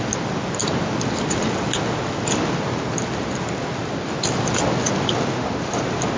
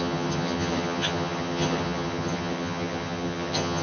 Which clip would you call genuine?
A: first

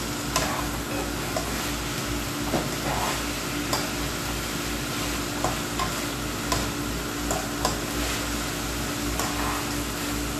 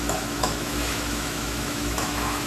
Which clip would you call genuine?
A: first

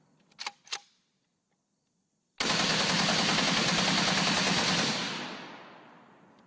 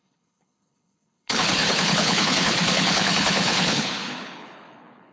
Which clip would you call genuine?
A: first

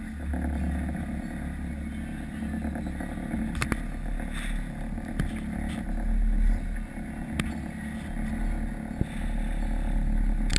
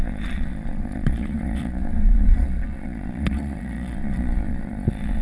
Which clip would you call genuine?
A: first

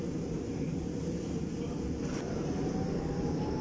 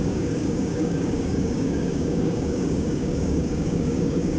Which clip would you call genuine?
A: first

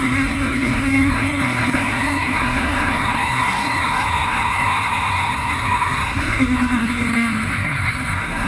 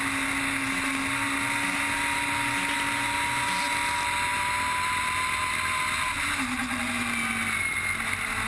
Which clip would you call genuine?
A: second